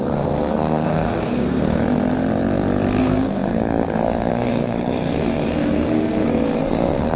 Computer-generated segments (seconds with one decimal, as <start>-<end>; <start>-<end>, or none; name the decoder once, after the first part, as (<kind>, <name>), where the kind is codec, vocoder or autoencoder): 0.0-1.8 (codec, SNAC); 3.0-7.2